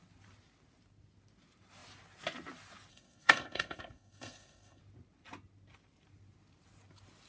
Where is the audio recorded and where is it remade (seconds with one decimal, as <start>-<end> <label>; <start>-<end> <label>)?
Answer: 0.0-2.9 recorded; 2.9-4.8 remade; 4.8-7.3 recorded